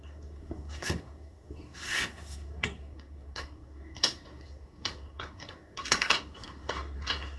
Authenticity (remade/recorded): remade